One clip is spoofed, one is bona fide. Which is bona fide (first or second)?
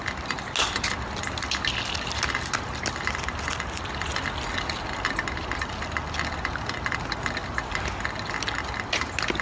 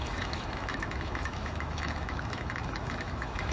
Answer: first